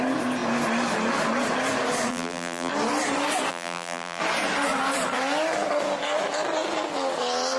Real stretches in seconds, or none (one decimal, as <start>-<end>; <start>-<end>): 0.0-2.1; 2.7-3.5; 4.2-7.6